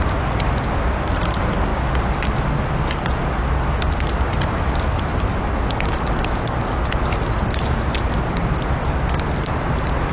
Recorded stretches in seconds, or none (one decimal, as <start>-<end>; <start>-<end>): 0.0-10.1